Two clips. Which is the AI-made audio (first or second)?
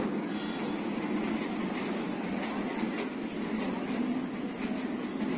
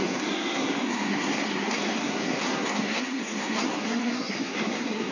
second